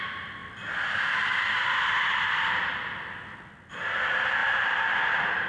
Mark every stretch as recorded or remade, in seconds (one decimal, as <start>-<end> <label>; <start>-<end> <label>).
0.0-5.5 recorded